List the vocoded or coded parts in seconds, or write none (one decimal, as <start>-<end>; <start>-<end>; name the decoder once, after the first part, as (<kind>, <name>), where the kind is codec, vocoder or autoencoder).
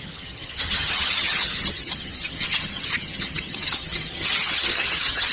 0.0-5.3 (vocoder, HiFi-GAN)